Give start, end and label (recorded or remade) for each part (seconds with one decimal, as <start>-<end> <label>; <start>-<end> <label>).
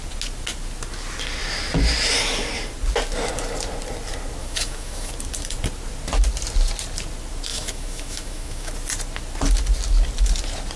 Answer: 0.0-4.4 recorded; 4.4-5.1 remade; 5.1-7.5 recorded; 7.5-8.7 remade; 8.7-10.8 recorded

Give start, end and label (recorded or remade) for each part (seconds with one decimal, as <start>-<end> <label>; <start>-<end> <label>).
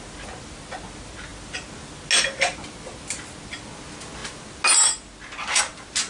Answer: 0.0-6.1 recorded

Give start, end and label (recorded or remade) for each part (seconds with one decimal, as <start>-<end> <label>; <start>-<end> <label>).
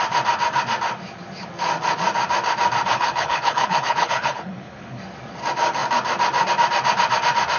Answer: 0.0-2.9 recorded; 2.9-5.0 remade; 5.0-7.6 recorded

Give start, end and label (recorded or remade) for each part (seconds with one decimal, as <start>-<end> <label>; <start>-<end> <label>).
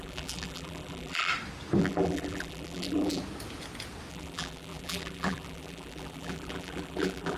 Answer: 0.0-1.3 remade; 1.3-1.8 recorded; 1.8-3.2 remade; 3.2-4.1 recorded; 4.1-7.4 remade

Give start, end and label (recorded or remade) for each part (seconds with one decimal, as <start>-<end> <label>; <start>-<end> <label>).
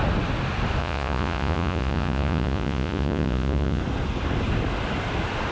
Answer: 0.0-0.8 recorded; 0.8-3.8 remade; 3.8-5.5 recorded